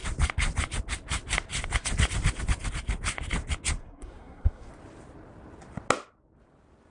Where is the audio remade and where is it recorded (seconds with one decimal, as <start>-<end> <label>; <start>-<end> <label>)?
0.0-3.8 recorded; 3.8-4.7 remade; 4.7-6.9 recorded

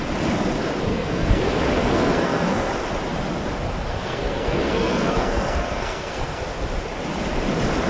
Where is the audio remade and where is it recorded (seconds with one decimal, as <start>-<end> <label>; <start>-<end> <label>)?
0.0-0.9 recorded; 0.9-1.4 remade; 1.4-1.8 recorded; 1.8-2.7 remade; 2.7-3.9 recorded; 3.9-6.4 remade; 6.4-7.9 recorded